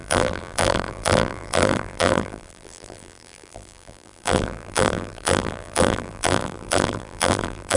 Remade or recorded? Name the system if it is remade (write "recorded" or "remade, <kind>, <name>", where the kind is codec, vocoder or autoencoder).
remade, vocoder, BigVGAN v2